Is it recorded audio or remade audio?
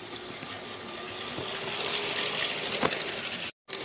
recorded